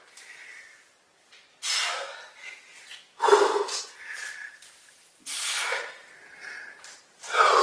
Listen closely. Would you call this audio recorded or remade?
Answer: recorded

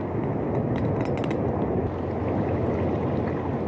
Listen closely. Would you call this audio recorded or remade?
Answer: recorded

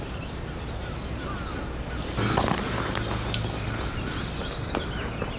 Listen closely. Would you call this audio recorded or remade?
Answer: recorded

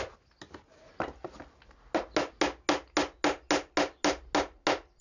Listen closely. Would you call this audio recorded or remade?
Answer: recorded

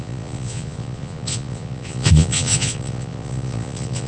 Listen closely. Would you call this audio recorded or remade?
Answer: remade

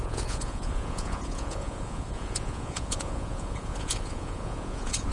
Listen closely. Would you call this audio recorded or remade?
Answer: remade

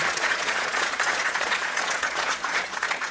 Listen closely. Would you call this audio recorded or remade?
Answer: remade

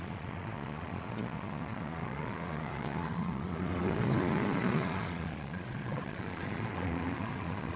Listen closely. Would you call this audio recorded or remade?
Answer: remade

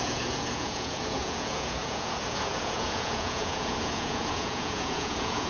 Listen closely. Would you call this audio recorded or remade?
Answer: remade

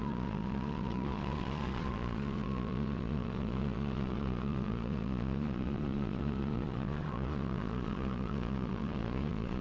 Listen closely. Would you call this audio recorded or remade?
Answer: remade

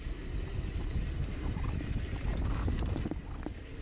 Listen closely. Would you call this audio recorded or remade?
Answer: recorded